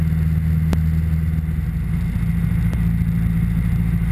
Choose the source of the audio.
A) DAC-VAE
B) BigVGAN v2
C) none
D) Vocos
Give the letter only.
C